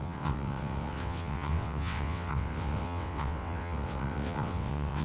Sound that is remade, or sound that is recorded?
remade